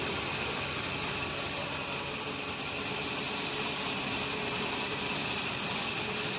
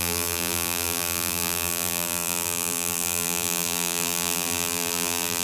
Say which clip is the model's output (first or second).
second